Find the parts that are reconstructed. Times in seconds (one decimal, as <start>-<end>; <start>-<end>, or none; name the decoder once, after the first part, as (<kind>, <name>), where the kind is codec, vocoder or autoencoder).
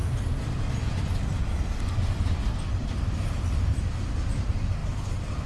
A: 4.8-5.5 (vocoder, BigVGAN v2)